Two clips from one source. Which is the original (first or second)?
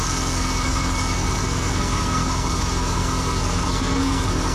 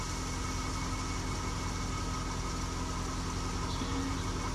second